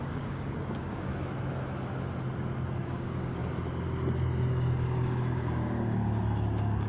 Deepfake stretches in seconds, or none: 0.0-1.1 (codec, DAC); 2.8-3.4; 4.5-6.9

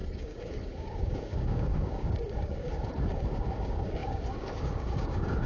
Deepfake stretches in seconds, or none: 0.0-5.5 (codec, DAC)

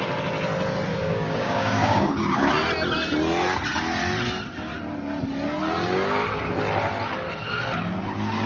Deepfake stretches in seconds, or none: 0.9-2.5 (codec, DAC)

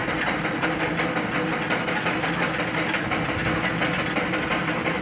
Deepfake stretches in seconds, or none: none

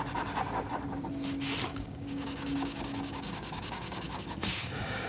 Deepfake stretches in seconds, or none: 1.7-5.1 (codec, DAC)

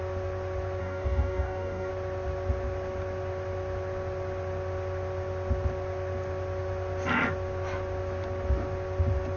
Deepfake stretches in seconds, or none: 0.8-1.9 (codec, DAC)

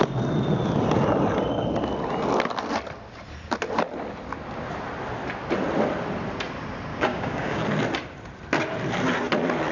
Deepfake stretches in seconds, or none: 6.9-7.6 (codec, DAC)